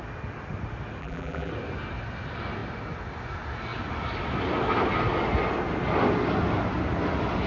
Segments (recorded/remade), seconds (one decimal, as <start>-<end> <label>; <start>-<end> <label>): 0.0-1.0 recorded; 1.0-1.5 remade; 1.5-7.5 recorded

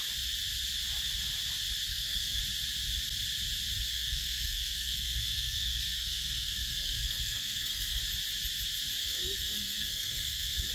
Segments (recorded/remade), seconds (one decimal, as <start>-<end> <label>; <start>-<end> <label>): 0.0-1.9 recorded; 1.9-2.4 remade; 2.4-3.9 recorded; 3.9-8.0 remade; 8.0-9.0 recorded; 9.0-10.7 remade

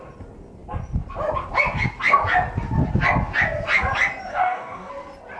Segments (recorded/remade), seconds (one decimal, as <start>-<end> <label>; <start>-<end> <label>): 0.0-4.3 recorded; 4.3-4.9 remade; 4.9-5.4 recorded

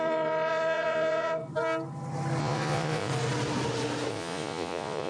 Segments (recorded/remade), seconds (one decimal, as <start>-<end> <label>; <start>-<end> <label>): 0.0-1.4 remade; 1.4-2.4 recorded; 2.4-3.1 remade; 3.1-4.1 recorded; 4.1-5.1 remade

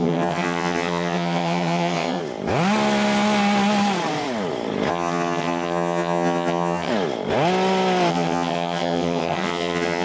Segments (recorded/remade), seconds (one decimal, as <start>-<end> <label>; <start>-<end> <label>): 0.0-2.2 remade; 2.2-4.9 recorded; 4.9-6.9 remade; 6.9-8.1 recorded; 8.1-10.0 remade